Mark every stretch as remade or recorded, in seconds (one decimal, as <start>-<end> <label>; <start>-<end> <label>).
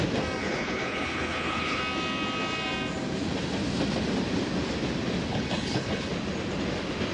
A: 0.0-0.4 recorded; 0.4-1.8 remade; 1.8-5.3 recorded; 5.3-6.1 remade; 6.1-7.1 recorded